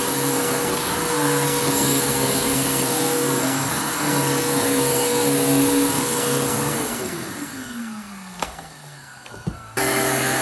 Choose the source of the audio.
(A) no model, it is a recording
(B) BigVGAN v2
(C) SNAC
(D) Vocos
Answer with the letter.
C